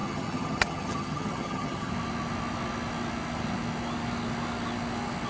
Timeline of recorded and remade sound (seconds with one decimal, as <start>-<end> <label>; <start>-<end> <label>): 0.0-1.9 remade; 1.9-5.3 recorded